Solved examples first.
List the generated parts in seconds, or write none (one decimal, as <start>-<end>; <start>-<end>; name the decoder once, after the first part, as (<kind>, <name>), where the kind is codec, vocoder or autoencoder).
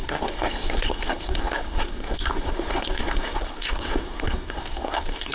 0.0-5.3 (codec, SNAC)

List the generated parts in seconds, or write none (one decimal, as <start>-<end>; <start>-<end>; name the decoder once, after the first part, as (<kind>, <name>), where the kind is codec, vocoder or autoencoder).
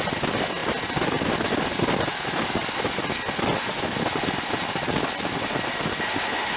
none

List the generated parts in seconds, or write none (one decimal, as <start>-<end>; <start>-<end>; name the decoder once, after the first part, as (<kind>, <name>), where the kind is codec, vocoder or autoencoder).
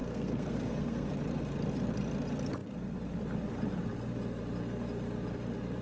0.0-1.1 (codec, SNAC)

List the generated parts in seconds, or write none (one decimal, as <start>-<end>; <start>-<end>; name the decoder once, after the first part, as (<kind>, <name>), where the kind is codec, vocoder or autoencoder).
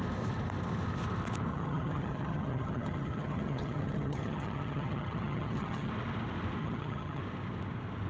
1.5-5.9 (vocoder, HiFi-GAN); 6.6-7.2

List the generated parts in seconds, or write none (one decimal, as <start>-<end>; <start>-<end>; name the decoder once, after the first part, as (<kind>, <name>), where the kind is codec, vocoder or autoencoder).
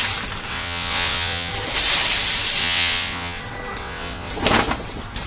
0.5-1.5 (vocoder, WaveNeXt); 2.6-3.4; 3.8-4.3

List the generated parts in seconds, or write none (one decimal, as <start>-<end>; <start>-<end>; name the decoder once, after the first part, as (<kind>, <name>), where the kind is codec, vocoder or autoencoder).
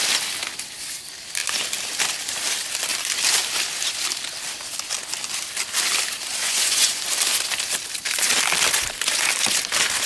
6.4-7.0 (vocoder, Vocos)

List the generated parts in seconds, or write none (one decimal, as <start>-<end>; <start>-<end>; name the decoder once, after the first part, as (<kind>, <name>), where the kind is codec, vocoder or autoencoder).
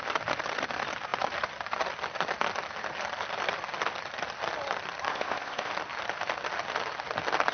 5.1-5.7 (codec, ZipCodec)